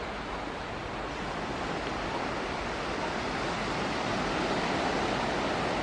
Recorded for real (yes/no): yes